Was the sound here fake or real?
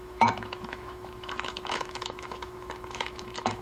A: fake